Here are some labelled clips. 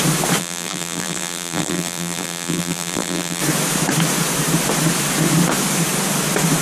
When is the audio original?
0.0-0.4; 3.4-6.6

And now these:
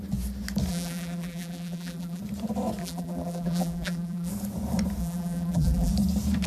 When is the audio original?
0.0-0.7; 2.2-2.8; 4.3-5.0; 5.9-6.5

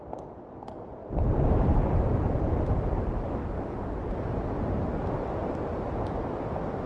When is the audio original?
0.0-1.0; 2.0-3.4; 4.2-6.9

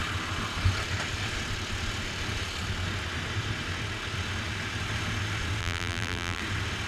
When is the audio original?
0.0-5.6; 6.4-6.9

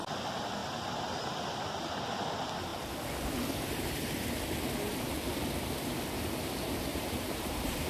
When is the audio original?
0.0-6.9

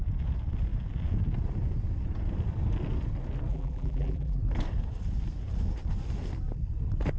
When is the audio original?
0.0-3.5; 4.4-7.2

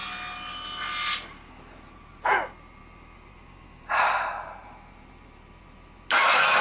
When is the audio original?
0.0-6.6

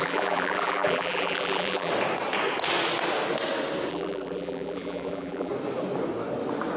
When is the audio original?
1.9-3.9; 5.5-6.8